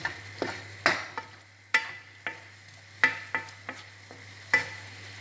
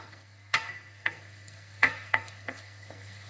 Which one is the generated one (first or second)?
second